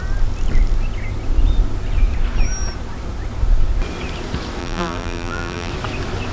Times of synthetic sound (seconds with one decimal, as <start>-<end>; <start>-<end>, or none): 4.6-5.7